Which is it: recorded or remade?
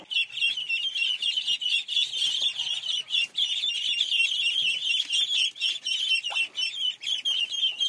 recorded